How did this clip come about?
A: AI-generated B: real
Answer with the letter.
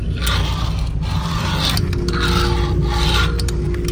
B